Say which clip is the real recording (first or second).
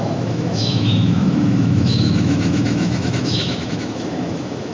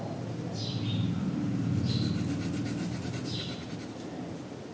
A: second